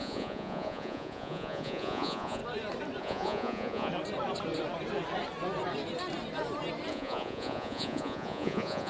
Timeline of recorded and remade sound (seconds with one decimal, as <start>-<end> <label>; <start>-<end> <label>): 0.0-2.4 remade; 2.4-3.0 recorded; 3.0-3.9 remade; 3.9-6.9 recorded; 6.9-8.9 remade